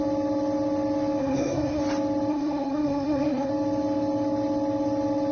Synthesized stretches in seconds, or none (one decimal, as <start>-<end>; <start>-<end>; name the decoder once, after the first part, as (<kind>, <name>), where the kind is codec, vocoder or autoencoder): 1.2-1.8 (codec, SNAC); 2.3-3.5